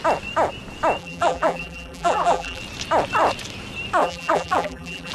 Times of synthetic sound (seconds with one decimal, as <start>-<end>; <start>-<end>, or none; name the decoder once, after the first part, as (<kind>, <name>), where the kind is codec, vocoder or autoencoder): 1.0-2.6 (vocoder, BigVGAN v2); 4.0-5.1